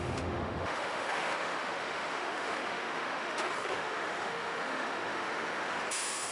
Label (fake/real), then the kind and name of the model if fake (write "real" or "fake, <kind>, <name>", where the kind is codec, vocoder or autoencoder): fake, autoencoder, DAC-VAE